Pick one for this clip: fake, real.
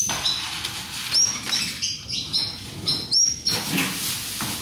real